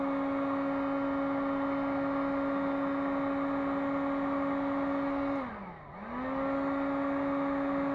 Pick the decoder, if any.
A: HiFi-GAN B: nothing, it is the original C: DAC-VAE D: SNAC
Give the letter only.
B